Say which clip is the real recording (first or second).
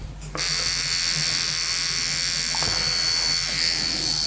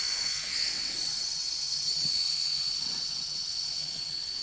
first